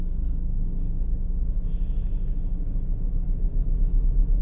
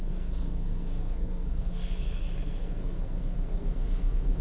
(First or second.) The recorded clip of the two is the first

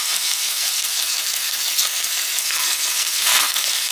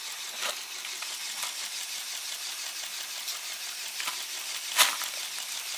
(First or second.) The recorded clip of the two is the second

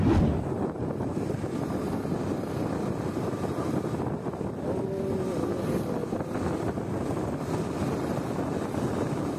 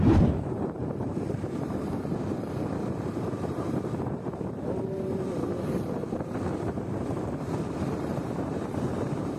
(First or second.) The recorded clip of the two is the first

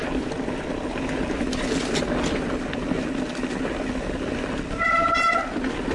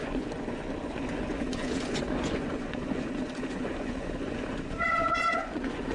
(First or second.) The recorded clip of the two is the first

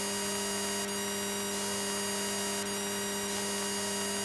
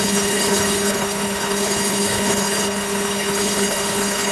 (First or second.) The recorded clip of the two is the first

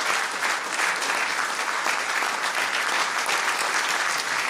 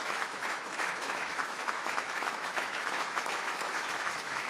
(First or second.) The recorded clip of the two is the first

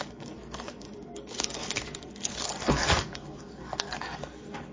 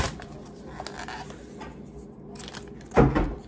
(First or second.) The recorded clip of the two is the second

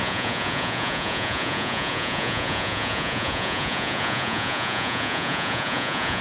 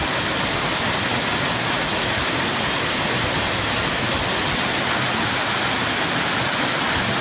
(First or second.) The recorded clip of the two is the second